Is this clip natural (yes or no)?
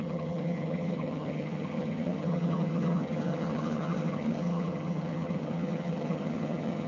no